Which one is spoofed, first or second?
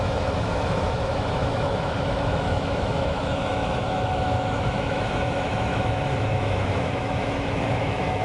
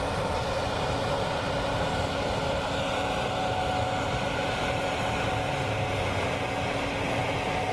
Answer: first